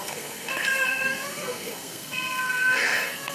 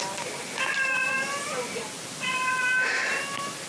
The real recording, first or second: second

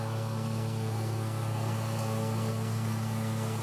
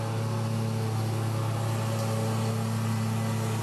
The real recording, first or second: second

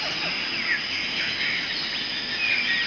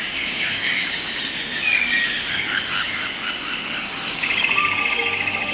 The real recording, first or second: first